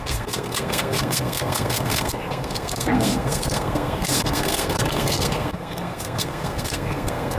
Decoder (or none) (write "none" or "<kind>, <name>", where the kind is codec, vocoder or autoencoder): codec, SNAC